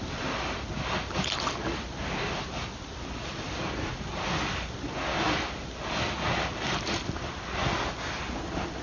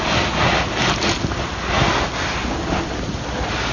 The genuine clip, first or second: second